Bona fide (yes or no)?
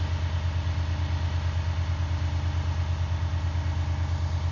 yes